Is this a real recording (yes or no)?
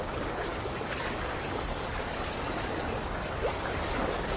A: no